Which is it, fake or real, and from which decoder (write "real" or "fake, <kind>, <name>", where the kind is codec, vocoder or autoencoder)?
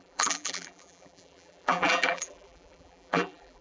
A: fake, vocoder, BigVGAN v2